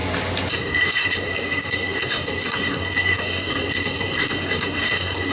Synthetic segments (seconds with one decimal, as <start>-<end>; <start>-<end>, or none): 0.5-5.3